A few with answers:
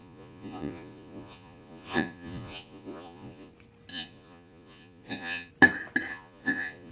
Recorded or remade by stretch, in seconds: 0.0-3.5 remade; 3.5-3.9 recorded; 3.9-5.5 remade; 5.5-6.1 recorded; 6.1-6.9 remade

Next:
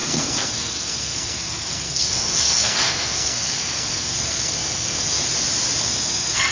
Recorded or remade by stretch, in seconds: 0.0-5.3 remade; 5.3-5.8 recorded; 5.8-6.5 remade

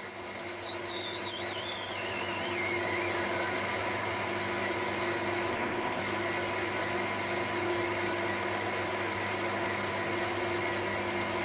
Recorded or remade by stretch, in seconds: 0.0-5.5 recorded; 5.5-6.0 remade; 6.0-11.4 recorded

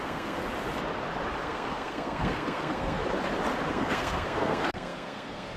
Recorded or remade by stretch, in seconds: 0.0-0.4 remade; 0.4-1.4 recorded; 1.4-3.0 remade; 3.0-3.7 recorded; 3.7-5.6 remade

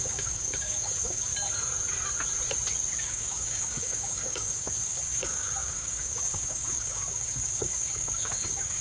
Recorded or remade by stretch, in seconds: 0.0-1.3 remade; 1.3-3.0 recorded; 3.0-8.8 remade

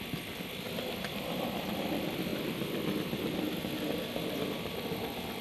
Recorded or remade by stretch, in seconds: 0.0-5.4 recorded

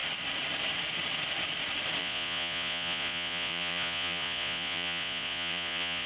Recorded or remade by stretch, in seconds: 0.0-2.0 recorded; 2.0-6.1 remade

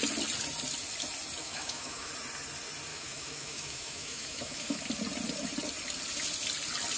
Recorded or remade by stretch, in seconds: 0.0-1.4 recorded; 1.4-2.1 remade; 2.1-2.9 recorded; 2.9-4.8 remade; 4.8-7.0 recorded